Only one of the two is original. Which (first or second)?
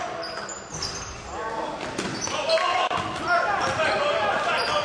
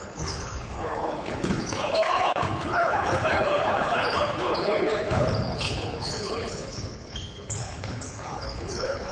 first